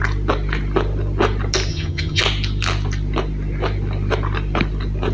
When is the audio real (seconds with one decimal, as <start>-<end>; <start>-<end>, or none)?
0.0-1.7; 2.2-5.1

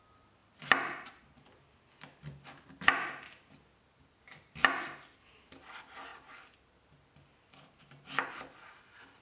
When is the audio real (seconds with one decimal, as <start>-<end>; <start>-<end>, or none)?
0.0-9.2

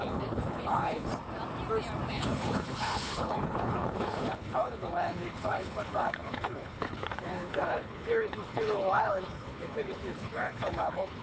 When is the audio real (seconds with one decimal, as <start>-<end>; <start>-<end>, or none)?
1.1-2.1

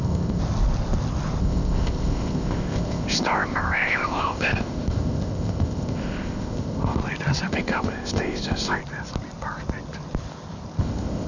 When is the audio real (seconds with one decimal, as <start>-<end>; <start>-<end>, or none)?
0.4-1.4; 7.0-7.5; 8.8-10.8

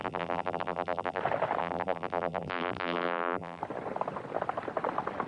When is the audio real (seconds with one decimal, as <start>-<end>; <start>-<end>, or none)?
1.2-1.6; 3.6-5.3

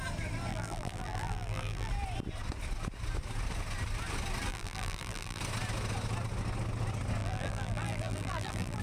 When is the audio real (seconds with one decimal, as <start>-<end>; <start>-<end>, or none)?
0.0-0.5; 1.9-4.5; 5.4-7.2

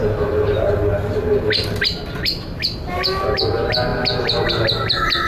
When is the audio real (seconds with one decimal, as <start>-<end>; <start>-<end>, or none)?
0.0-5.3

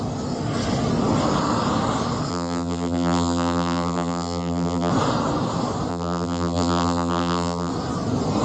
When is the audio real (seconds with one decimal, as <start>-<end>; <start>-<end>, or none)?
0.0-2.3; 4.9-5.9; 7.7-8.4